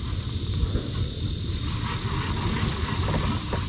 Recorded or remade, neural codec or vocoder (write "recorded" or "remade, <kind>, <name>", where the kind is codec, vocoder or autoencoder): recorded